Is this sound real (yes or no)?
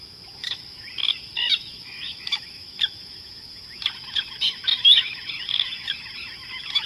no